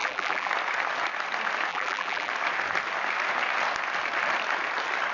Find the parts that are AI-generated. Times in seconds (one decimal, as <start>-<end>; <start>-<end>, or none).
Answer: 0.0-0.5; 1.7-2.3